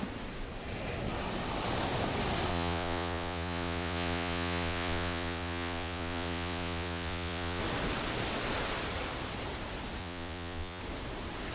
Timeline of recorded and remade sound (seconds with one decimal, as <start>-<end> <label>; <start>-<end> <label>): 0.0-2.5 recorded; 2.5-7.6 remade; 7.6-10.0 recorded; 10.0-10.8 remade; 10.8-11.5 recorded